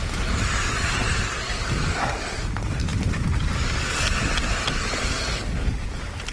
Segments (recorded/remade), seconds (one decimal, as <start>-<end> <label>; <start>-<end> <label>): 0.0-6.3 recorded